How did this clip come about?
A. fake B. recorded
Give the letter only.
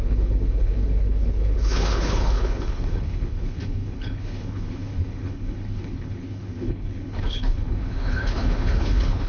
A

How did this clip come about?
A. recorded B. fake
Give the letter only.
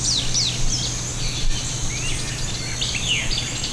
A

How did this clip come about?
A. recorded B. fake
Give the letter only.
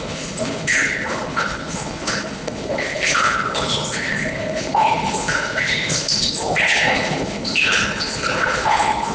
B